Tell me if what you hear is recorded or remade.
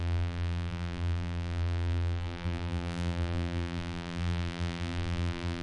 remade